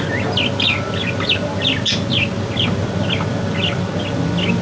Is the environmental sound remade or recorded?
recorded